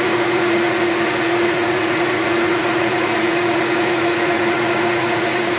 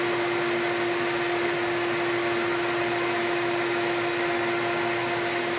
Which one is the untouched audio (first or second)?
second